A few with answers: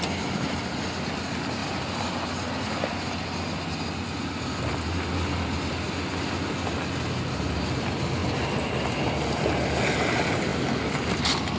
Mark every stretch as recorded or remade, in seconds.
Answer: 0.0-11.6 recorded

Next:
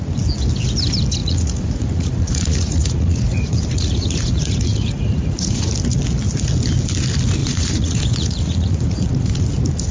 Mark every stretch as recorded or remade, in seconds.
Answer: 0.0-1.2 recorded; 1.2-5.7 remade; 5.7-7.4 recorded; 7.4-9.4 remade; 9.4-9.9 recorded